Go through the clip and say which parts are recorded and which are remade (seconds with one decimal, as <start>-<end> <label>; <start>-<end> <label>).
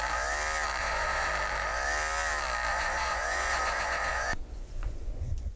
0.0-0.8 recorded; 0.8-1.3 remade; 1.3-2.7 recorded; 2.7-5.6 remade